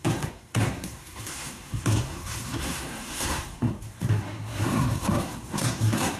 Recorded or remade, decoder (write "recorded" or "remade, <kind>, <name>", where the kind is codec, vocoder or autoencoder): remade, codec, SNAC